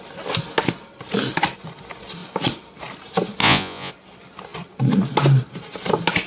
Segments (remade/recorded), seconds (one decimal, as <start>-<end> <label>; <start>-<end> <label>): 0.0-3.4 recorded; 3.4-3.9 remade; 3.9-6.3 recorded